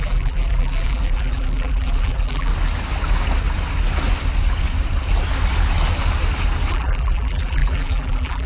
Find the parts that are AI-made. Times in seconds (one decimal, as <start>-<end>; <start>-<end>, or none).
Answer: 0.0-2.5; 6.7-8.5